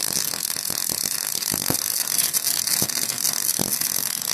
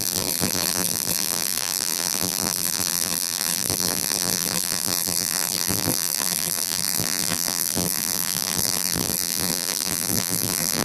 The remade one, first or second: second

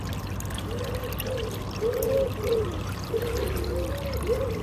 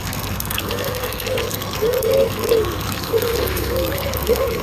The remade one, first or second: second